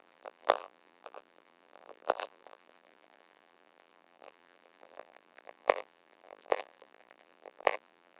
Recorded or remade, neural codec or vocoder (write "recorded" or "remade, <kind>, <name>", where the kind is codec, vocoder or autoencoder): remade, vocoder, BigVGAN v2